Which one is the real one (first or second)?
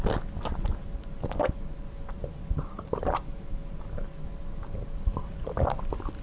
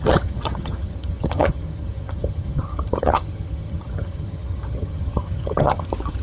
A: first